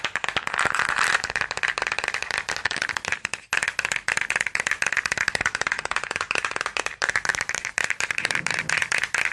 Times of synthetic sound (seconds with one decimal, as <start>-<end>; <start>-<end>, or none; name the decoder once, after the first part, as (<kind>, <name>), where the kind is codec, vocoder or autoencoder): 7.3-8.6 (vocoder, BigVGAN v2)